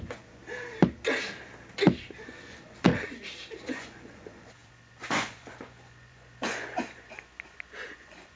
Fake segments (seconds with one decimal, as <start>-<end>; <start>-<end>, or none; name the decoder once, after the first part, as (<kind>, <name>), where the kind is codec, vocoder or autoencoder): 0.0-0.4 (vocoder, Vocos); 2.2-2.9; 3.6-8.4